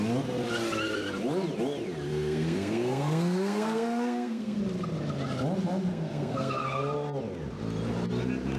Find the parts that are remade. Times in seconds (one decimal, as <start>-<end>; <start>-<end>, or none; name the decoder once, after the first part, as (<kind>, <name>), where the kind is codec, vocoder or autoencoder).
2.1-4.6 (codec, SNAC); 5.9-6.6

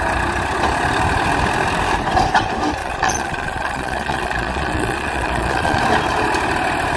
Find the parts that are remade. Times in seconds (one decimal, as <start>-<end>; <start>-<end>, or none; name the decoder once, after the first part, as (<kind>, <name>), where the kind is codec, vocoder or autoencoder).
2.8-5.8 (vocoder, Vocos)

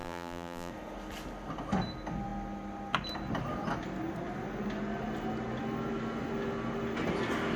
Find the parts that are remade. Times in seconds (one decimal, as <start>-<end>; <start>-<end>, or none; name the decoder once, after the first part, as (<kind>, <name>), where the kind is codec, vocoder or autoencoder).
0.0-0.7 (vocoder, BigVGAN v2)

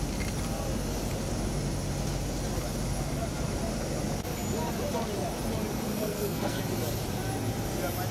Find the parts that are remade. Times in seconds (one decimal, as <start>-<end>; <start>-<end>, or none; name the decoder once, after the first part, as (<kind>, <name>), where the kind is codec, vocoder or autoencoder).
5.9-6.6 (codec, SNAC)

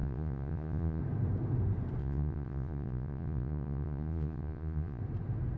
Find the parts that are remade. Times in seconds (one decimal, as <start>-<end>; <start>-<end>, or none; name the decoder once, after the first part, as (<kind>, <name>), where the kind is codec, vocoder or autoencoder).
0.0-1.0 (vocoder, Vocos); 2.0-5.0

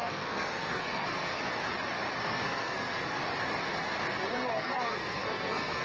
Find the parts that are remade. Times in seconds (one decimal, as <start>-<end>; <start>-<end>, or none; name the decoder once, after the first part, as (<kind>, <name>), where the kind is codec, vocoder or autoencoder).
0.0-1.3 (codec, SNAC); 2.2-3.2; 4.3-5.8